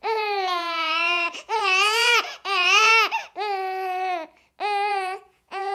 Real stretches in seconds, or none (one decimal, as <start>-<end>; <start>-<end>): 2.9-4.9